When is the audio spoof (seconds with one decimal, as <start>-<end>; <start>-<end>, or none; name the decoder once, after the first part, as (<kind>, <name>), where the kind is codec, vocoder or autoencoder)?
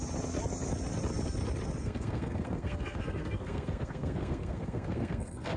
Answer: 1.8-5.6 (codec, SNAC)